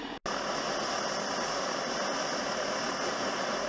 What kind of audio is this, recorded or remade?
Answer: recorded